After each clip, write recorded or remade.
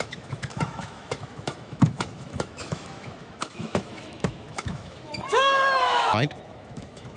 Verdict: remade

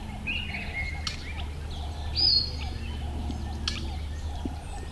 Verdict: recorded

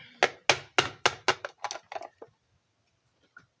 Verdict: recorded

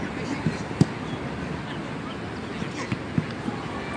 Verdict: recorded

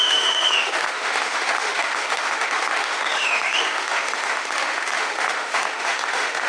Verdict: remade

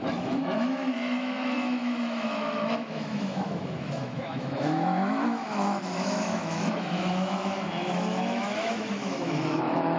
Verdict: remade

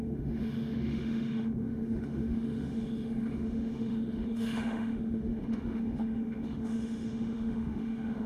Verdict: remade